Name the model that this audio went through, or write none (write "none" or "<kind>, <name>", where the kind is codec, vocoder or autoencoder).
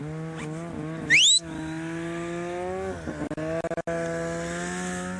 none